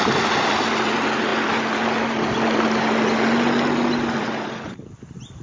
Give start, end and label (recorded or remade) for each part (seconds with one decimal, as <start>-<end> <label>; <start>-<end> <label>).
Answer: 0.0-5.4 recorded